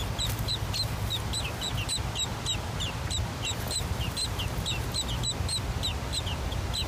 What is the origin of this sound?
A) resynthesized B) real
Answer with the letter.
B